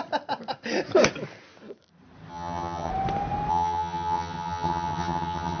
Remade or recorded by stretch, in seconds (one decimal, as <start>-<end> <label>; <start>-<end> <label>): 0.0-2.3 recorded; 2.3-2.9 remade; 2.9-3.5 recorded; 3.5-5.6 remade

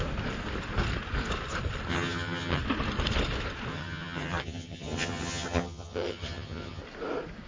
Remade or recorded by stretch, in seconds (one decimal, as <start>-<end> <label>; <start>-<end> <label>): 0.0-1.9 recorded; 1.9-2.6 remade; 2.6-3.7 recorded; 3.7-6.8 remade; 6.8-7.5 recorded

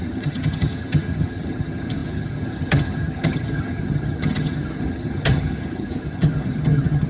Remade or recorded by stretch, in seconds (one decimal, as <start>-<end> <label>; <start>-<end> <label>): 0.0-7.1 remade

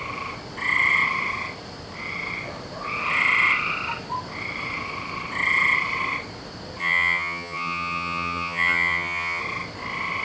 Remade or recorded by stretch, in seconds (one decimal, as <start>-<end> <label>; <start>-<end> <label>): 0.0-6.8 recorded; 6.8-9.4 remade; 9.4-10.2 recorded

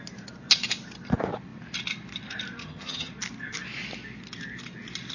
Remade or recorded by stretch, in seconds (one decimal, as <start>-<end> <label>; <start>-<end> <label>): 0.0-2.6 recorded; 2.6-3.1 remade; 3.1-5.1 recorded

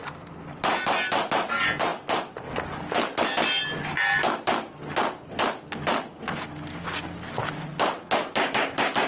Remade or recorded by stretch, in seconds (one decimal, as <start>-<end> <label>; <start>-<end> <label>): 0.0-9.1 recorded